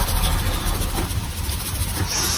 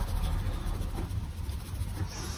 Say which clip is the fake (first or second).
first